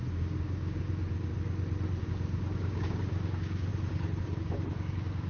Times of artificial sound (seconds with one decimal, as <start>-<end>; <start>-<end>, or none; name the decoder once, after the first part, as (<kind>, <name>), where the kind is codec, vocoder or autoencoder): 0.0-1.3 (codec, DAC); 2.0-3.7; 4.2-5.3